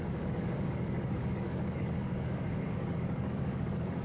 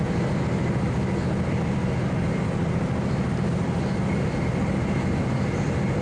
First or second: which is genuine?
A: second